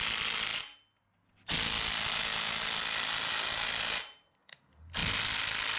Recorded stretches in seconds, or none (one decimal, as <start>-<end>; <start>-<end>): 0.0-5.8